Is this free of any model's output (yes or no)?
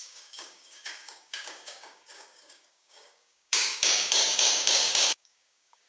no